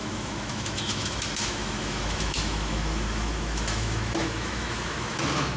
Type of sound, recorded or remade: remade